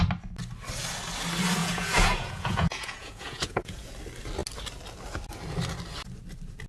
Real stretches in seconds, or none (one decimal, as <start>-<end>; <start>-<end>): 0.0-1.6; 3.9-6.7